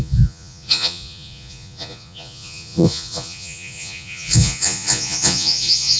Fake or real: fake